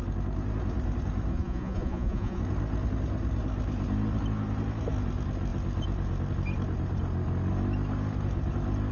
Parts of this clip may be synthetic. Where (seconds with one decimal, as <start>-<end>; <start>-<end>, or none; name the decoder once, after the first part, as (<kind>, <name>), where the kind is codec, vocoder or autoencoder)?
1.3-2.4 (vocoder, Vocos)